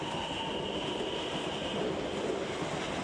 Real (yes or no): yes